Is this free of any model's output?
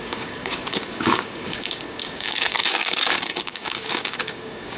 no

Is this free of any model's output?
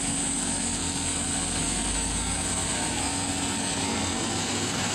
no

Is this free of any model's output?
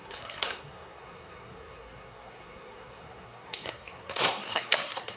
no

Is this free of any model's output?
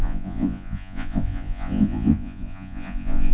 no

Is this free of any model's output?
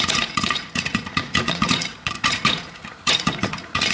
no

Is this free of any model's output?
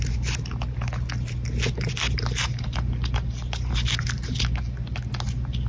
yes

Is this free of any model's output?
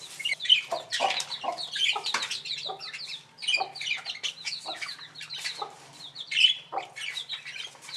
no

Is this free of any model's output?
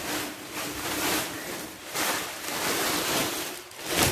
no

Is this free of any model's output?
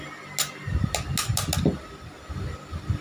yes